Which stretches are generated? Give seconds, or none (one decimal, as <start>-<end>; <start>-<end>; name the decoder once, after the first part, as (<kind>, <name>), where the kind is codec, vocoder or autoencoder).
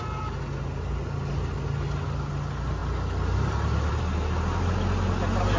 none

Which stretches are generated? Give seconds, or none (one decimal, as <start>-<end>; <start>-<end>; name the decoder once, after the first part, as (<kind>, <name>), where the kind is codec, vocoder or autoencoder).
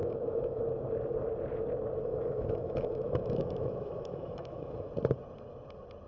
0.0-0.6 (autoencoder, DAC-VAE); 2.1-4.9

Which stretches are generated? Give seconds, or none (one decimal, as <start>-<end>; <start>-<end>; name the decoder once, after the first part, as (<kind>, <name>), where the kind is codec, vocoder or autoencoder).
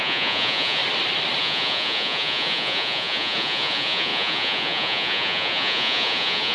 0.0-0.8 (vocoder, Vocos); 1.4-6.5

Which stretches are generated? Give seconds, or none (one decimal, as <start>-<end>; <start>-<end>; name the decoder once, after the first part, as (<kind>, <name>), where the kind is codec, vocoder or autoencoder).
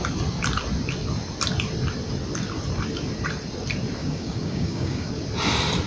4.0-5.1 (codec, DAC)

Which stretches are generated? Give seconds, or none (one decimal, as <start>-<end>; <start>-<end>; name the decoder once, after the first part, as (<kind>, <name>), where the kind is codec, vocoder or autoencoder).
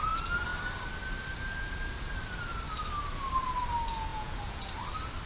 4.1-4.7 (vocoder, Vocos)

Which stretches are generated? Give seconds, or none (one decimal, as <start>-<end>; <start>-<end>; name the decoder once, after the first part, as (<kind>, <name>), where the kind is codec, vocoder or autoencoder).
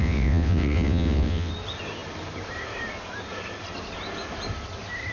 0.0-1.5 (vocoder, WaveNeXt)